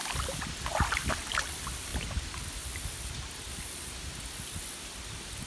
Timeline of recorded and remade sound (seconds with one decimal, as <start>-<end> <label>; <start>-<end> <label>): 0.0-1.9 remade; 1.9-5.5 recorded

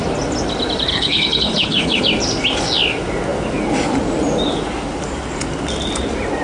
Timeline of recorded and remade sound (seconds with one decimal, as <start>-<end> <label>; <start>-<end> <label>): 0.0-0.9 recorded; 0.9-2.0 remade; 2.0-6.4 recorded